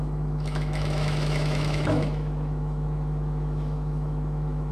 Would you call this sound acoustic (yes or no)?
no